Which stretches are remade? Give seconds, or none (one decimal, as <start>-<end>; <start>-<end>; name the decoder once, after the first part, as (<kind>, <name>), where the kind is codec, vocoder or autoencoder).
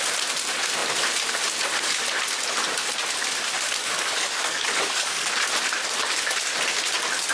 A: 3.8-5.3 (codec, DAC)